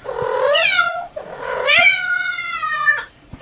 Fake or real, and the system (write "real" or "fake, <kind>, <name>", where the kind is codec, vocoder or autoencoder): fake, vocoder, Vocos